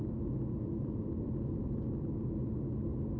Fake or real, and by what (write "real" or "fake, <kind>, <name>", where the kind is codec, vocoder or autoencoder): real